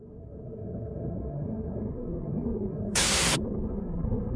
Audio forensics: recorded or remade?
remade